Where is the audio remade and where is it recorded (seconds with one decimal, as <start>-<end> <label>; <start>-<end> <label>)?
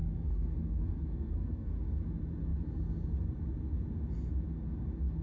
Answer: 0.0-1.7 remade; 1.7-5.2 recorded